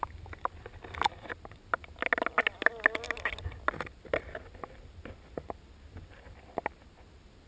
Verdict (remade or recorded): recorded